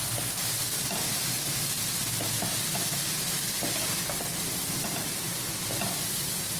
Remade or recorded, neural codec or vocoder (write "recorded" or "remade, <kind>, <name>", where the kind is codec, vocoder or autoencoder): recorded